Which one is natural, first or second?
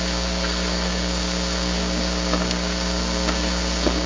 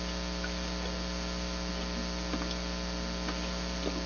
second